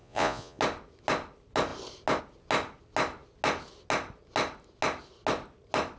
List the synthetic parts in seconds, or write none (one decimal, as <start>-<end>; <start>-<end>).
0.0-0.6